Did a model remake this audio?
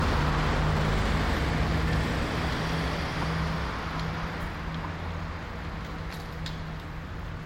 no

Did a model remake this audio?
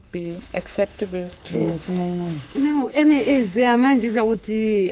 yes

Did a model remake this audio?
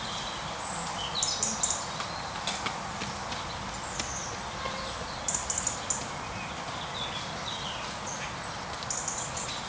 no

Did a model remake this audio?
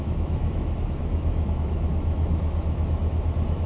yes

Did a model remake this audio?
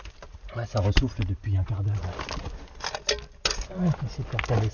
no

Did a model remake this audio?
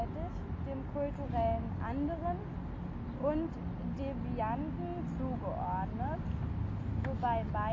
no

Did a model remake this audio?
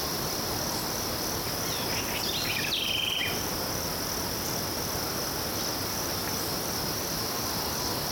no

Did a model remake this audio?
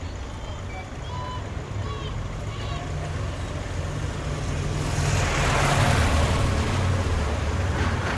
no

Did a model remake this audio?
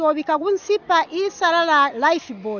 no